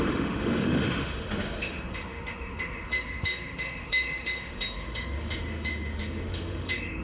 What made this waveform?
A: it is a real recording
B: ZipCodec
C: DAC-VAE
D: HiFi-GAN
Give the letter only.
C